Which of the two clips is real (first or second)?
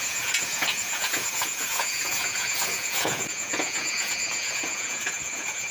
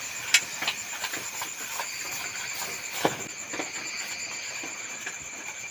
second